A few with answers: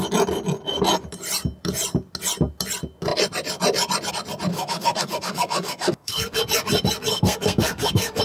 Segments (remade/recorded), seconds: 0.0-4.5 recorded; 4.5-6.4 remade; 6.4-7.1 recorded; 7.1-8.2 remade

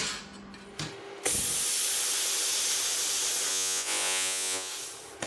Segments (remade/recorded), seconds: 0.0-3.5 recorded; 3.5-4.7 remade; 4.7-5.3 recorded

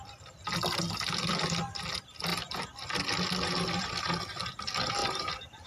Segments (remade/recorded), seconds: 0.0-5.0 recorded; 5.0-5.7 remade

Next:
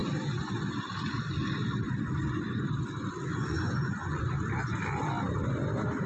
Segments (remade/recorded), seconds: 0.0-3.3 recorded; 3.3-4.2 remade; 4.2-6.1 recorded

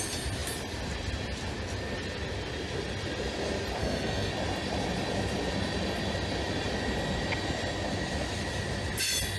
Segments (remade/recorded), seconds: 0.0-3.8 recorded; 3.8-4.3 remade; 4.3-9.4 recorded

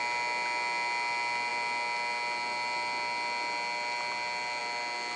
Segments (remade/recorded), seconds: 0.0-5.2 recorded

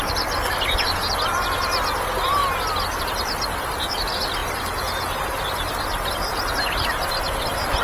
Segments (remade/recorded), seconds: 0.0-7.8 recorded